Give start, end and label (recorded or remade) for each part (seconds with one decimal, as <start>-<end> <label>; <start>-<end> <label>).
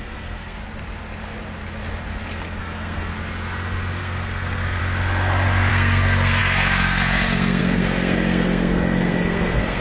0.0-0.6 remade; 0.6-2.6 recorded; 2.6-3.1 remade; 3.1-4.0 recorded; 4.0-4.8 remade; 4.8-5.7 recorded; 5.7-9.8 remade